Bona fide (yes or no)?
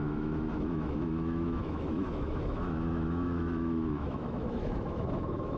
no